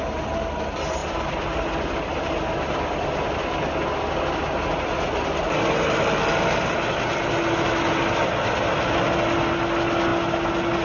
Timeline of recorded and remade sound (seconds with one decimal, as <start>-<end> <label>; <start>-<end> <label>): 0.0-10.8 recorded